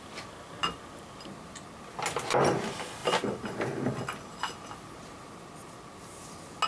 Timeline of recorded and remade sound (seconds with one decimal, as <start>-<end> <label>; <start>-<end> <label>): 0.0-6.7 recorded